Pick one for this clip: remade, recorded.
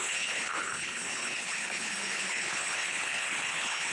remade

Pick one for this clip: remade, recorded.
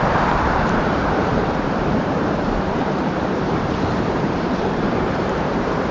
remade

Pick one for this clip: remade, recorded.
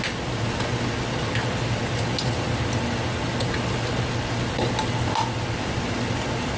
recorded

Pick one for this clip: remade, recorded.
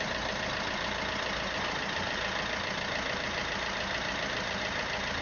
recorded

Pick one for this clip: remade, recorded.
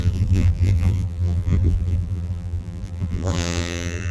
remade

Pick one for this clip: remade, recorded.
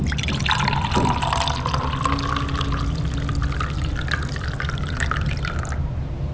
recorded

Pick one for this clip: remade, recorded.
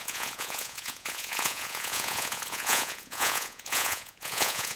remade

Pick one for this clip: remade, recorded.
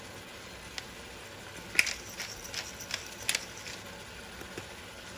recorded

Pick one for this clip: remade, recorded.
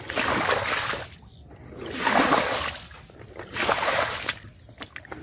recorded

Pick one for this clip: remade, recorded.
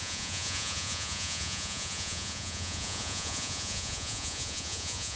remade